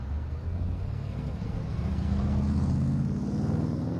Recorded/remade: remade